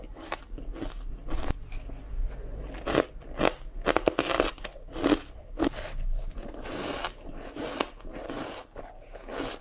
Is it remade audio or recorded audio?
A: recorded